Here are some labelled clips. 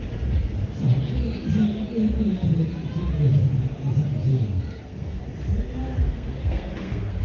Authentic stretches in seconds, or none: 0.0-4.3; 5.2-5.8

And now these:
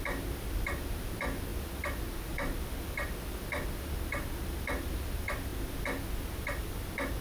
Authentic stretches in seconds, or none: 0.0-7.2

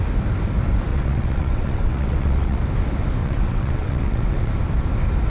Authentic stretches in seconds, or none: 0.0-0.9; 2.6-3.2; 4.5-5.3

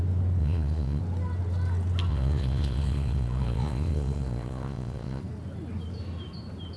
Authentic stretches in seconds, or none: 0.0-0.4; 1.0-2.1; 5.2-6.8

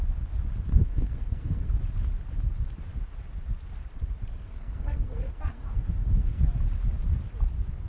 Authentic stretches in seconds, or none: 0.0-0.7; 1.7-4.4; 6.4-7.9

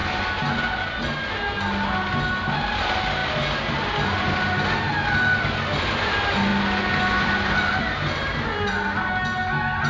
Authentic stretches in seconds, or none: 0.0-9.9

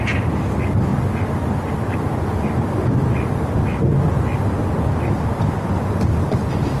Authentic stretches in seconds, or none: 0.0-6.8

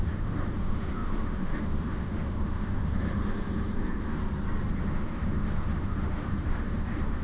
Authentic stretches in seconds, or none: 4.2-4.8